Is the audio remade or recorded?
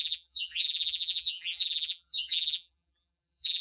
remade